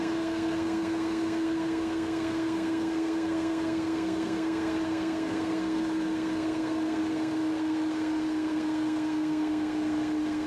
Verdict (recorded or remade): remade